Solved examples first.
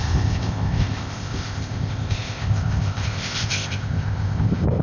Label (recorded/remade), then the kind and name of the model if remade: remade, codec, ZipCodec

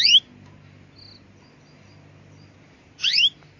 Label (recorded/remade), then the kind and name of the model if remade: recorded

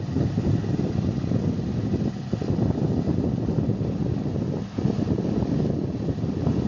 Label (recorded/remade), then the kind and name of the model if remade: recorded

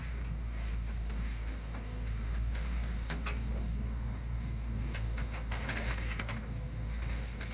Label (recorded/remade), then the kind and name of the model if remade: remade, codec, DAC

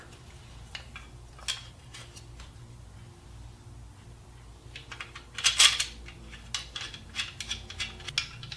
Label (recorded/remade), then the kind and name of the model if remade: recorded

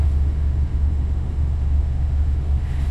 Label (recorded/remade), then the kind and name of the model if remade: remade, autoencoder, DAC-VAE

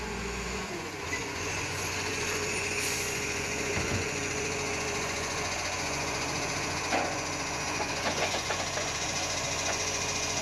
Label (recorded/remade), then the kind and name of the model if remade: remade, vocoder, Vocos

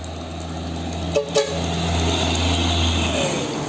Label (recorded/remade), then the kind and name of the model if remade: recorded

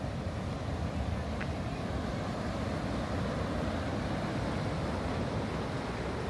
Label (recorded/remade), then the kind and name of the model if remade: recorded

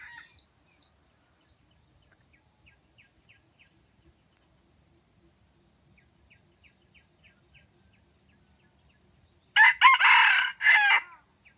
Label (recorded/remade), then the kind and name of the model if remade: recorded